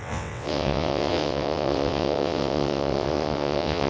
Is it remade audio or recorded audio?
remade